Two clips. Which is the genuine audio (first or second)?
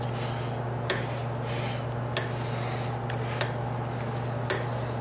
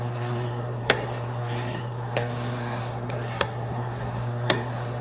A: first